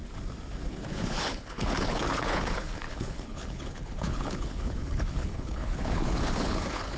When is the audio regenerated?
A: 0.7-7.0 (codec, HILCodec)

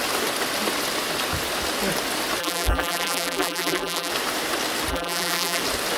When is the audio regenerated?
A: 2.4-4.1 (vocoder, BigVGAN v2); 4.9-5.6

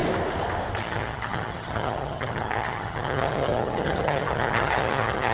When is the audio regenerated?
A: 0.8-5.3 (vocoder, HiFi-GAN)

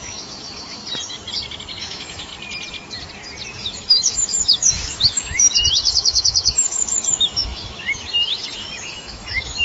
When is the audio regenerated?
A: 0.0-0.8 (autoencoder, DAC-VAE); 1.8-2.3; 3.5-9.6